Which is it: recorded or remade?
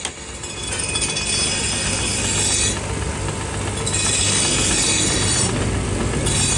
recorded